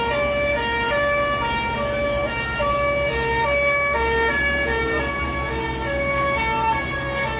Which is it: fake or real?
real